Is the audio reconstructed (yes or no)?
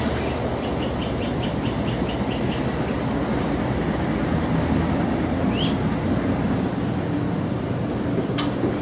no